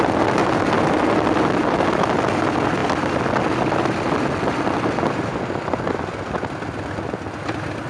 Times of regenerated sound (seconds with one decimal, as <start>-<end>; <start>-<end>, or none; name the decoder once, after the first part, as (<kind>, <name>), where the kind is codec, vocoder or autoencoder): none